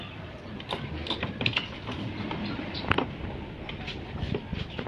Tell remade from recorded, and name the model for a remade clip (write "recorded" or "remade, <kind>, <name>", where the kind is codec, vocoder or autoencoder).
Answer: recorded